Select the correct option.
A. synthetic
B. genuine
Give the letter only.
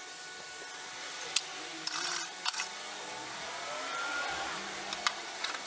B